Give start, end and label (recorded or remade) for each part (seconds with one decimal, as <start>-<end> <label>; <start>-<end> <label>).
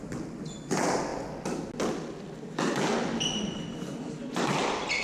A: 0.0-5.0 recorded